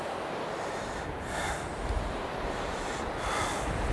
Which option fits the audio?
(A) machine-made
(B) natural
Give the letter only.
B